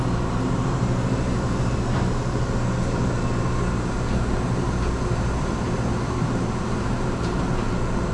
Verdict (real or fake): fake